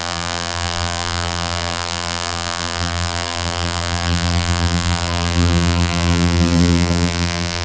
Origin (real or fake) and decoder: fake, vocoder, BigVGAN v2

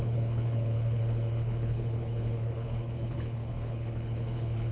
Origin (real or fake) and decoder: fake, codec, HILCodec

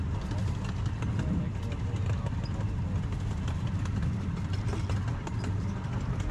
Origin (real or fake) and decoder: real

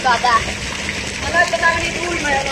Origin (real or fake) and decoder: real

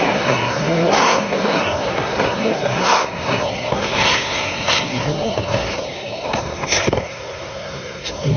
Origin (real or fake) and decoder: fake, codec, SNAC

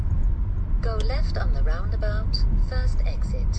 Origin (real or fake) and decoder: real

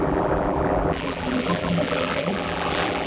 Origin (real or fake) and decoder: fake, vocoder, BigVGAN v2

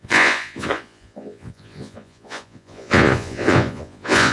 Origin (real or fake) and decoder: fake, vocoder, Vocos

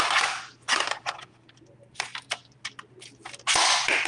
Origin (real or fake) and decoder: real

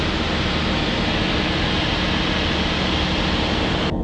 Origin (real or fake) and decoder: real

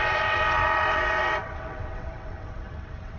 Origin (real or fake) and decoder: fake, vocoder, WaveNeXt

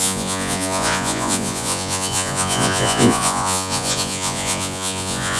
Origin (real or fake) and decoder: fake, vocoder, Vocos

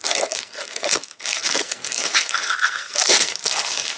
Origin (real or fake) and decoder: fake, codec, SNAC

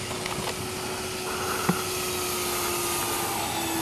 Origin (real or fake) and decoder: real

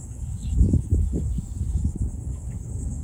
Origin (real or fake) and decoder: fake, codec, DAC